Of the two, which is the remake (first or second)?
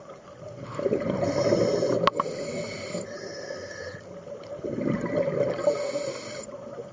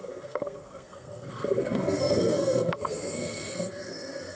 second